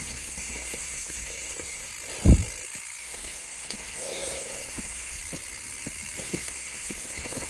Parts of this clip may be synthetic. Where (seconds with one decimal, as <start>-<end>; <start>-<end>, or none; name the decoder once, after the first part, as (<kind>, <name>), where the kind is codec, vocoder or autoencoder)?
0.0-1.9 (codec, SNAC); 3.0-5.2; 6.2-7.5